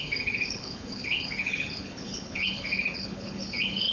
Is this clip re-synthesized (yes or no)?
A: yes